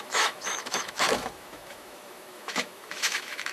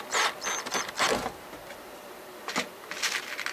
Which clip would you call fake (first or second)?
first